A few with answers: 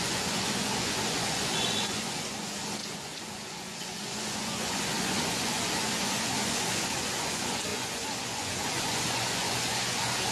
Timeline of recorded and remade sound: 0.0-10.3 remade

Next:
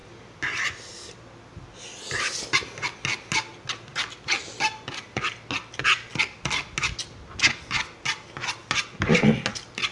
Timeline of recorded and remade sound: 0.0-9.9 recorded

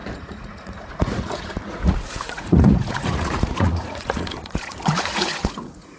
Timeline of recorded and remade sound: 0.0-6.0 remade